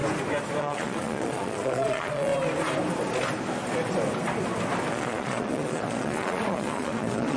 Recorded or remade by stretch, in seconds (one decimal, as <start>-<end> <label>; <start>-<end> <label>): 0.0-0.6 recorded; 0.6-2.3 remade; 2.3-4.9 recorded; 4.9-7.4 remade